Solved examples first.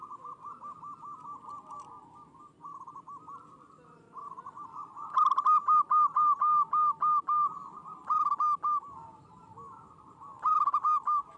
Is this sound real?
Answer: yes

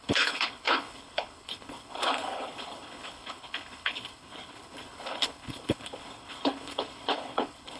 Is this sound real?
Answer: no